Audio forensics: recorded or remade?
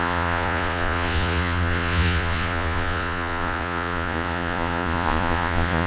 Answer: remade